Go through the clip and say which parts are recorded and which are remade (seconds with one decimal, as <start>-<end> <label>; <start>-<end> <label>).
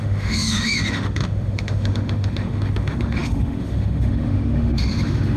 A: 0.0-5.4 remade